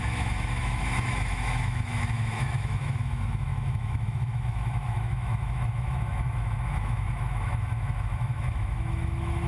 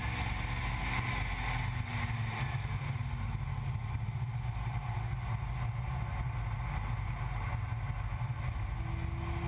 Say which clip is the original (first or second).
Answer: second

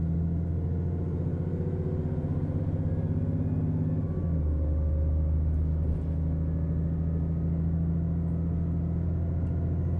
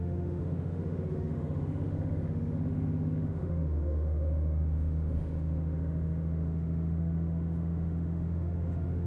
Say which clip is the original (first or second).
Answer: first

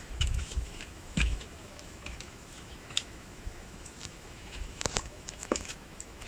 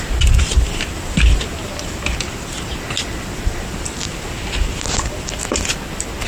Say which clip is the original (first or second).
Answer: second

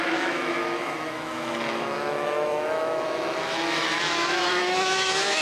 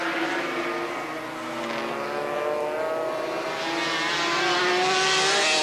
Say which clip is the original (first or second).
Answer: second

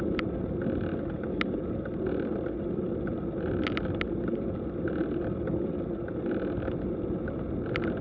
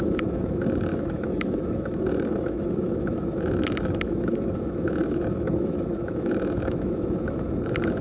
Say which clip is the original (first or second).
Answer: first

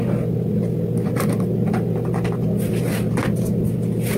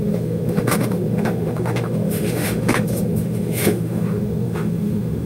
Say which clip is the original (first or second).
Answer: first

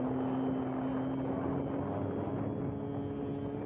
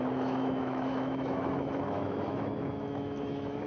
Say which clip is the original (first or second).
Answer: first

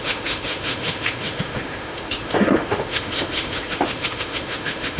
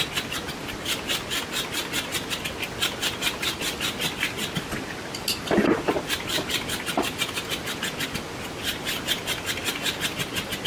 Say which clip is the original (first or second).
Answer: second